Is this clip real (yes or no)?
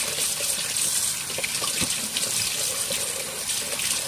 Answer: yes